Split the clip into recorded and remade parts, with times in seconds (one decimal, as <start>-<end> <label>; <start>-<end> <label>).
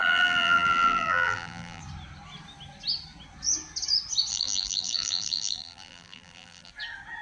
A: 0.0-1.8 remade; 1.8-4.3 recorded; 4.3-6.7 remade; 6.7-7.2 recorded